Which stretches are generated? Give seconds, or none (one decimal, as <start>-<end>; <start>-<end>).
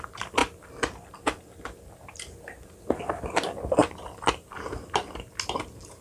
none